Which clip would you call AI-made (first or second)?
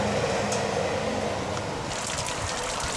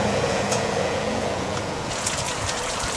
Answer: second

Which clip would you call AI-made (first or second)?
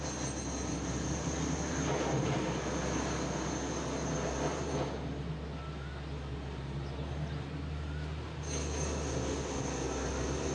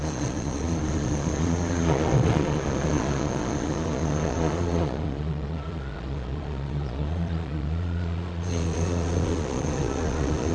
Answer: second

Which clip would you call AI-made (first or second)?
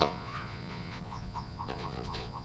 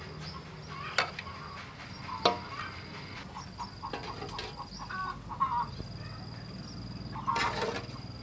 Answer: first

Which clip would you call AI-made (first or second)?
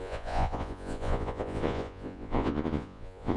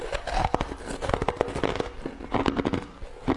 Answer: first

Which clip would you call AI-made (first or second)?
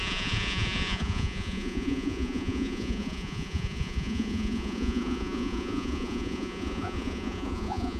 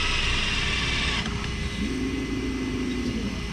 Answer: first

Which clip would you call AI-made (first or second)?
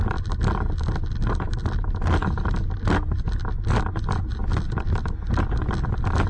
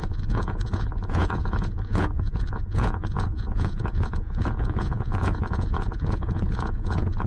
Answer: second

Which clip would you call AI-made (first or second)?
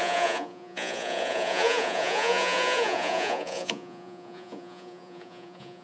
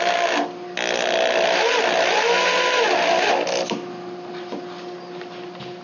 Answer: first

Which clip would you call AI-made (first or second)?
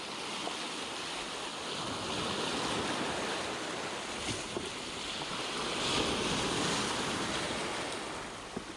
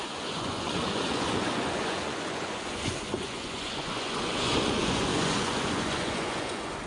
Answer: second